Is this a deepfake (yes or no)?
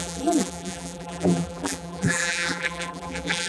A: yes